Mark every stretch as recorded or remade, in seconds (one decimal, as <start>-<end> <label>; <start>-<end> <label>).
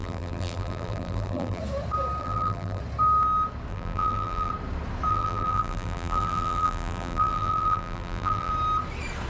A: 0.0-1.6 remade; 1.6-2.2 recorded; 2.2-2.8 remade; 2.8-3.7 recorded; 3.7-4.5 remade; 4.5-5.1 recorded; 5.1-8.5 remade; 8.5-9.3 recorded